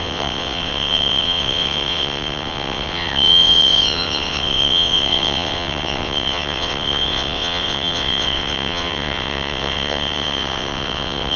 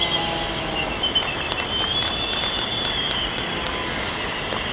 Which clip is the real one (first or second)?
second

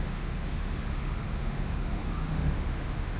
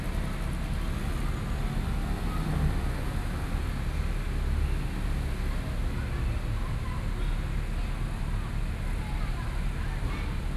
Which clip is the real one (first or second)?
second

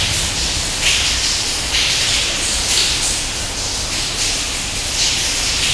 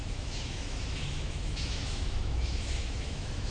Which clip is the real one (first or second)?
first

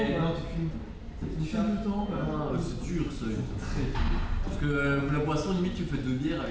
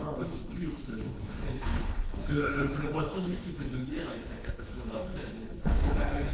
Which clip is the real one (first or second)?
first